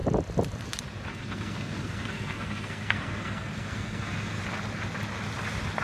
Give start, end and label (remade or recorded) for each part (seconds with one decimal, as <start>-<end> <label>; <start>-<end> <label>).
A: 0.0-1.1 recorded; 1.1-4.4 remade; 4.4-5.8 recorded